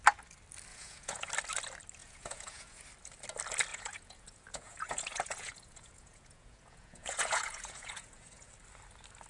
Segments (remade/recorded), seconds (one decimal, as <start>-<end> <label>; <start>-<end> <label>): 0.0-0.7 recorded; 0.7-1.3 remade; 1.3-2.0 recorded; 2.0-2.8 remade; 2.8-3.7 recorded; 3.7-8.5 remade; 8.5-9.3 recorded